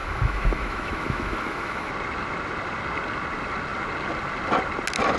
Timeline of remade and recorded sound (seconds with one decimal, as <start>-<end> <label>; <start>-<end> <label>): 0.0-1.9 remade; 1.9-5.2 recorded